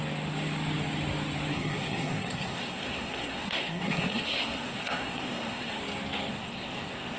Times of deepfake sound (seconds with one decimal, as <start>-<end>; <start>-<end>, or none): 1.5-5.8; 6.3-7.2